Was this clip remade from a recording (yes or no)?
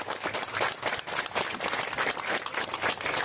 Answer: no